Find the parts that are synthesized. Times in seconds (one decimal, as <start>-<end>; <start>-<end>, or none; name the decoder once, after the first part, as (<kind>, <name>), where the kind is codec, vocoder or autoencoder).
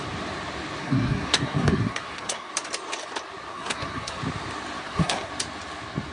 0.8-2.5 (codec, SNAC); 3.5-4.2; 4.8-5.3